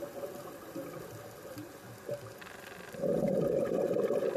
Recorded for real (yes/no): yes